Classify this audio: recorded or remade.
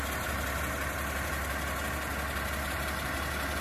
recorded